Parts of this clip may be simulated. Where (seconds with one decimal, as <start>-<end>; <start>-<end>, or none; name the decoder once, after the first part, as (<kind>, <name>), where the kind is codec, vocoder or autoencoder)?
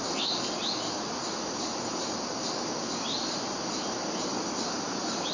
none